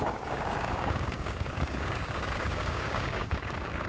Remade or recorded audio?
remade